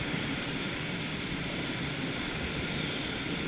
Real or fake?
fake